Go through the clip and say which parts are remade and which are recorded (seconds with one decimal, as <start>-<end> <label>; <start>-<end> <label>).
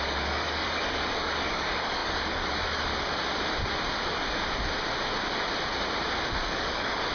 0.0-2.9 remade; 2.9-6.3 recorded; 6.3-7.1 remade